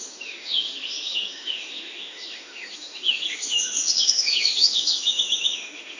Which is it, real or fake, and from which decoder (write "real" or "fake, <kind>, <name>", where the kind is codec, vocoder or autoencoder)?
fake, autoencoder, DAC-VAE